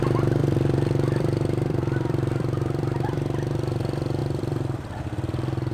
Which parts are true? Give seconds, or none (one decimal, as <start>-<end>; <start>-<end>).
0.0-0.4; 3.8-4.2; 5.0-5.7

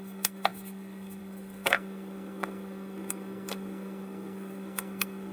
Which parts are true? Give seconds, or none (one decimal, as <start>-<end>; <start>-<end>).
none

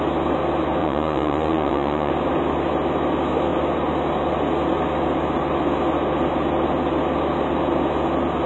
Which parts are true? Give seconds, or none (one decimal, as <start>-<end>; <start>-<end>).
0.0-0.8; 2.1-8.5

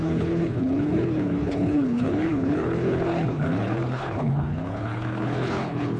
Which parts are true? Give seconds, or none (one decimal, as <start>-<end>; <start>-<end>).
none

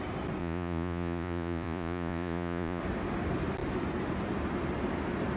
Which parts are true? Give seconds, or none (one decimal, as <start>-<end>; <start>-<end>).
0.0-0.4; 2.8-5.4

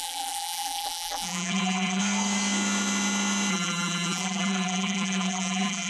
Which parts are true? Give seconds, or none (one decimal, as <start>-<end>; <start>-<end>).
2.0-3.5

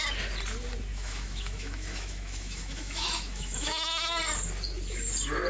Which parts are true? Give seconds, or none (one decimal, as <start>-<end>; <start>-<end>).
0.0-0.9; 4.2-5.5

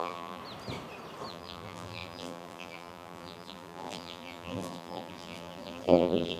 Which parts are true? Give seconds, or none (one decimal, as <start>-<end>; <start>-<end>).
0.4-1.3